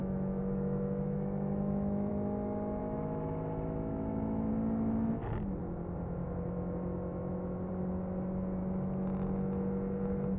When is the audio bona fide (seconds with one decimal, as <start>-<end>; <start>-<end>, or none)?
2.1-2.8; 4.5-10.4

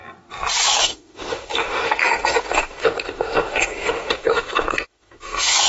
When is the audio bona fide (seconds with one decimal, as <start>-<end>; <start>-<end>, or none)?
0.0-0.8

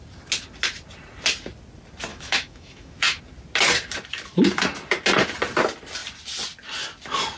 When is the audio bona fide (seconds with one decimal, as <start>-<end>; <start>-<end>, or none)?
0.0-2.1; 3.2-7.4

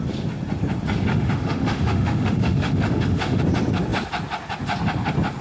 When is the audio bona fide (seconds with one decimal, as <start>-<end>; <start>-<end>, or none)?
0.0-1.1; 3.4-5.4

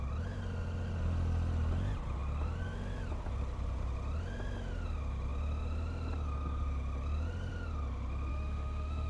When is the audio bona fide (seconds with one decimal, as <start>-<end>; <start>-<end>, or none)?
0.0-8.3

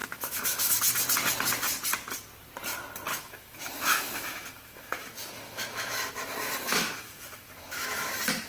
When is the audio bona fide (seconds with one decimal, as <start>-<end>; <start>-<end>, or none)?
0.7-3.1; 8.1-8.5

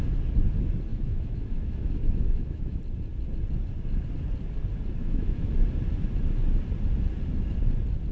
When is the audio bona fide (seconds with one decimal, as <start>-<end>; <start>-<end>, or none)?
0.0-0.9; 2.8-5.0; 5.5-8.1

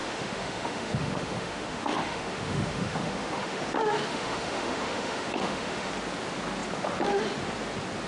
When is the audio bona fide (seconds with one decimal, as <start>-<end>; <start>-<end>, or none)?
3.6-4.1; 5.9-8.1